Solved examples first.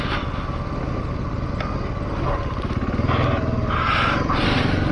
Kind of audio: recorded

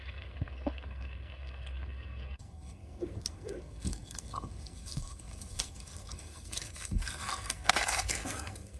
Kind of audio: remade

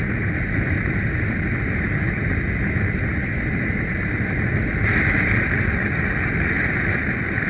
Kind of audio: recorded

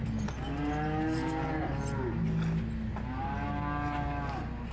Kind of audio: recorded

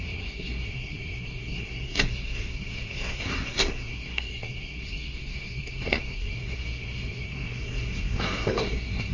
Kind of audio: remade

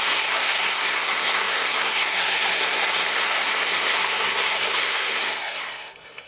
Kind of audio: remade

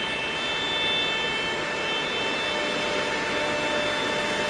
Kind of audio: recorded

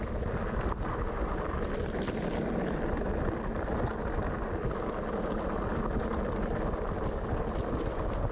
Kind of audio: recorded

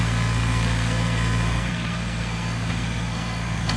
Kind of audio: remade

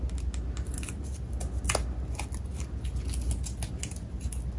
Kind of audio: recorded